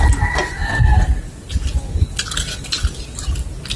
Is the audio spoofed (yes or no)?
no